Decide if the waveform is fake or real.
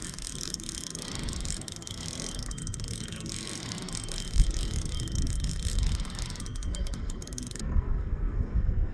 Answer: fake